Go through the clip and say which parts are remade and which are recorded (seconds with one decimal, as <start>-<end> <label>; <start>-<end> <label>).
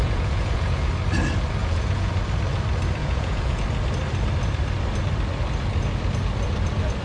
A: 0.0-0.9 remade; 0.9-1.6 recorded; 1.6-2.2 remade; 2.2-3.0 recorded; 3.0-3.6 remade; 3.6-7.0 recorded